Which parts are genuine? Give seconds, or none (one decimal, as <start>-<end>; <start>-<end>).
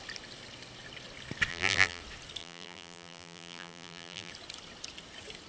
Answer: 0.0-1.5; 2.0-2.4; 4.3-5.5